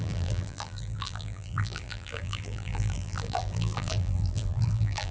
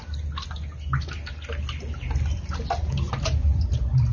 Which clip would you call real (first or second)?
second